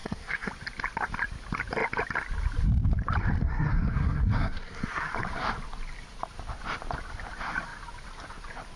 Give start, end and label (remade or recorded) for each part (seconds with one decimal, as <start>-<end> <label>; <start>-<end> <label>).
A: 0.0-0.5 remade; 0.5-3.4 recorded; 3.4-5.1 remade; 5.1-8.8 recorded